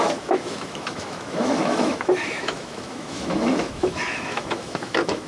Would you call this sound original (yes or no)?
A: no